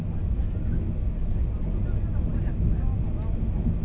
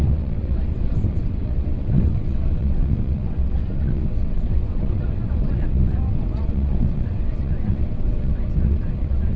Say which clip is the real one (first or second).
first